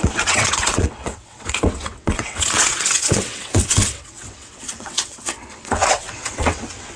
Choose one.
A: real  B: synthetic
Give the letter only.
B